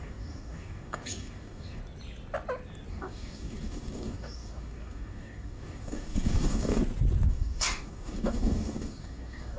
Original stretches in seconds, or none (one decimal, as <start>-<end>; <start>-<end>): 1.8-2.9; 6.8-7.3